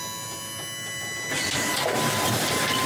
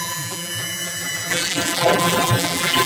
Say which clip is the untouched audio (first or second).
first